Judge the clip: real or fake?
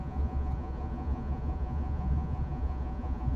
fake